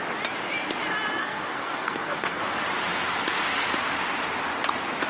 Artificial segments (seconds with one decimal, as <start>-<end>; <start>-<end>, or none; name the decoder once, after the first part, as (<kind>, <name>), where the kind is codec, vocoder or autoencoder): 1.2-2.4 (codec, SNAC)